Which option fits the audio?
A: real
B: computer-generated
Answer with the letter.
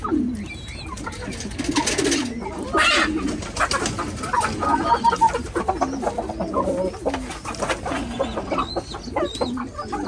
A